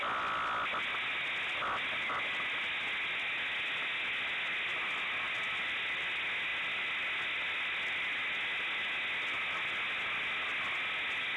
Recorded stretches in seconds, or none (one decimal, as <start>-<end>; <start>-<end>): 0.0-11.4